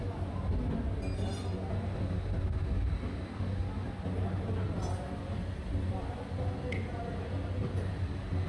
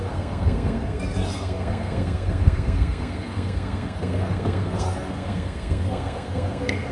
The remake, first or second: second